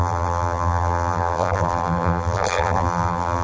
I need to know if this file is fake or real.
fake